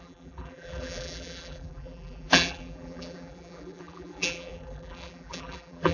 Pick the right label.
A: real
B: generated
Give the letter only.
B